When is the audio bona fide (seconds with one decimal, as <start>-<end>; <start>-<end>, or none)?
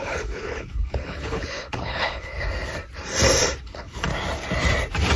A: 2.3-3.6; 4.1-5.2